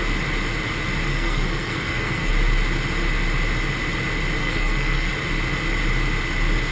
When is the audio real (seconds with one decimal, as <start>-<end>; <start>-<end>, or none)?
0.0-1.1; 2.3-4.4; 5.1-6.7